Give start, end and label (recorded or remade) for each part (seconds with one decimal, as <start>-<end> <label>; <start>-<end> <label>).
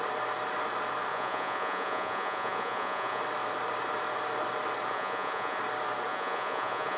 0.0-1.1 recorded; 1.1-3.2 remade; 3.2-4.9 recorded; 4.9-5.6 remade; 5.6-6.1 recorded; 6.1-7.0 remade